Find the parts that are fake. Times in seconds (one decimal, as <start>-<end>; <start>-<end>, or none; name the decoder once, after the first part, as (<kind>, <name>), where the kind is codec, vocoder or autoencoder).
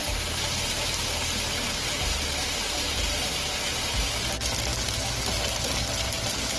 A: 0.0-4.0 (vocoder, BigVGAN v2)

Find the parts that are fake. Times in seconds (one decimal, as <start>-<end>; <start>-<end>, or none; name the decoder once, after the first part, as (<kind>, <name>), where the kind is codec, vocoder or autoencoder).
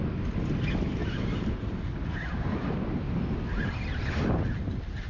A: 1.0-4.1 (vocoder, BigVGAN v2)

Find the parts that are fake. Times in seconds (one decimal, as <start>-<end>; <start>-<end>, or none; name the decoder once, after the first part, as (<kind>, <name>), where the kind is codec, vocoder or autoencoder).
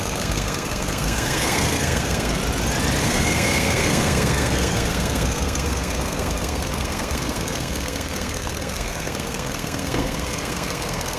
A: 0.0-2.4 (codec, SNAC); 3.0-11.2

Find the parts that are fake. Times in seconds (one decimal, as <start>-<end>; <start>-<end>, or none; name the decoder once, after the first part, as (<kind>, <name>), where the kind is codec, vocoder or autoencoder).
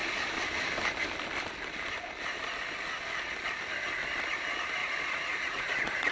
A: 4.8-6.1 (vocoder, Vocos)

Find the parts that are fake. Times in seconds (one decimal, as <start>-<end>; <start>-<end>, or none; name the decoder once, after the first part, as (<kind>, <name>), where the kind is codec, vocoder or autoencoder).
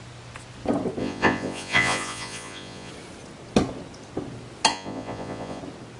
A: 1.0-2.9 (vocoder, Vocos); 4.7-5.6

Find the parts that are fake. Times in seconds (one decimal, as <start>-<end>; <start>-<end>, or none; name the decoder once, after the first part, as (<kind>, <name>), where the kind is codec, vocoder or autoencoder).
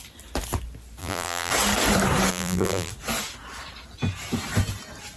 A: 1.0-1.5 (vocoder, BigVGAN v2); 2.3-2.9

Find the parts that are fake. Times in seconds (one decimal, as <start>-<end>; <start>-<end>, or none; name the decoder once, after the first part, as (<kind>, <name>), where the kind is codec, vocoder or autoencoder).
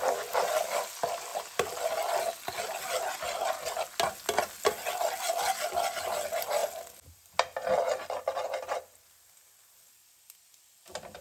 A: none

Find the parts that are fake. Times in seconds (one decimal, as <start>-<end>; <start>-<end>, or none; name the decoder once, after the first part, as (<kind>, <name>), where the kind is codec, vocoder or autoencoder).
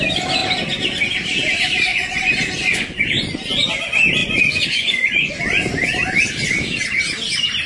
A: 1.9-3.0 (vocoder, Vocos); 4.2-5.4